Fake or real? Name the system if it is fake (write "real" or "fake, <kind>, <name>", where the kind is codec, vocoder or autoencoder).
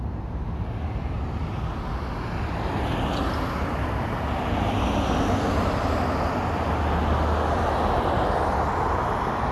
real